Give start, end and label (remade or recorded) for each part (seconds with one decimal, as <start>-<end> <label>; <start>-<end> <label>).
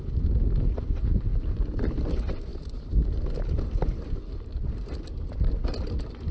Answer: 0.0-6.3 recorded